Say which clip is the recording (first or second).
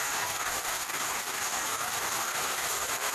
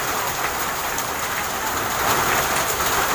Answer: second